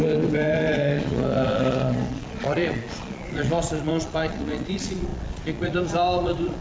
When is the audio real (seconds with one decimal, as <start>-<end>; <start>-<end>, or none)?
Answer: none